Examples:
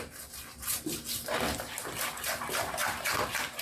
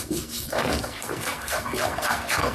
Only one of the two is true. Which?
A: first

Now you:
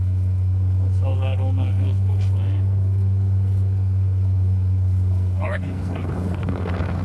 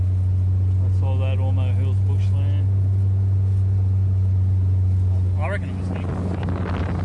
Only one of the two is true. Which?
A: second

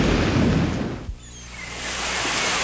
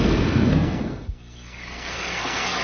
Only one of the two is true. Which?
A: first